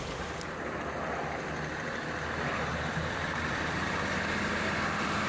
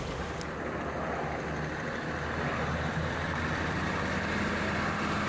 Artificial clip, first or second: first